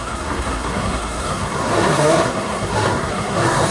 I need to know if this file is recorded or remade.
remade